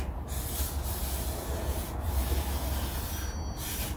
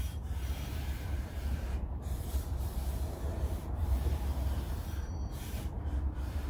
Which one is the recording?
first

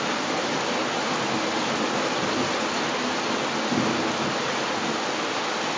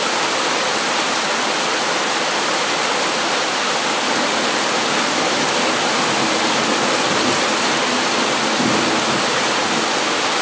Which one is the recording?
first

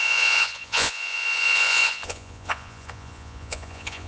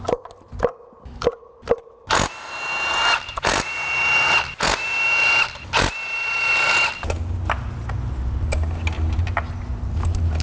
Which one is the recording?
second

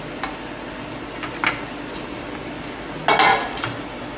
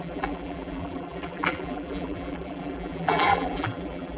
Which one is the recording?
first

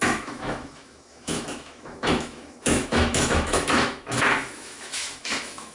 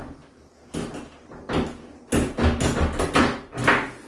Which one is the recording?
second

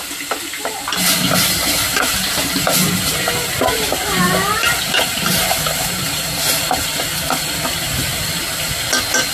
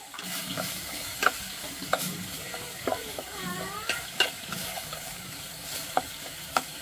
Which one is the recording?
first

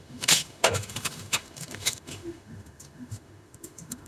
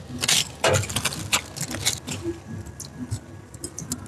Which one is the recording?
second